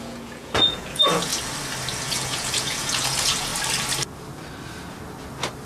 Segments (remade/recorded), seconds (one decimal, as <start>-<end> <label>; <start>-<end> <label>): 0.0-1.3 remade; 1.3-2.0 recorded; 2.0-3.5 remade; 3.5-5.7 recorded